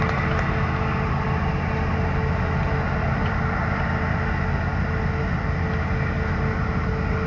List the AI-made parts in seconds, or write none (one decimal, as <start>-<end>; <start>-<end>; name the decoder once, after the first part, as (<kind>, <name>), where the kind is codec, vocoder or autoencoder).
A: 3.0-3.8 (vocoder, BigVGAN v2)